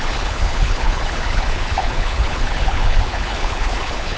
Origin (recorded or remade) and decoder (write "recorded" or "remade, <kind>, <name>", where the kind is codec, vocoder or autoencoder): remade, codec, HILCodec